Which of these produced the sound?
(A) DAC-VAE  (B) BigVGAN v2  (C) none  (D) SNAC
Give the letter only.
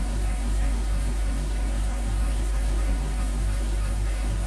D